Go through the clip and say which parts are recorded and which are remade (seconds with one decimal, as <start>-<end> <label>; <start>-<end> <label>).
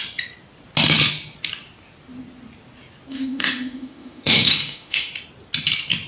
0.0-3.1 recorded; 3.1-5.1 remade; 5.1-6.1 recorded